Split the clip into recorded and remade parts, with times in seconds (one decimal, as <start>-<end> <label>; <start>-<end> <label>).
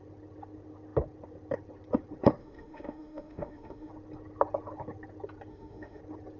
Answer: 0.0-2.4 recorded; 2.4-3.9 remade; 3.9-5.5 recorded; 5.5-6.0 remade; 6.0-6.4 recorded